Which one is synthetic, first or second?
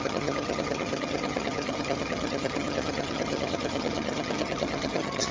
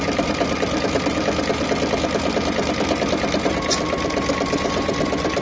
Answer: first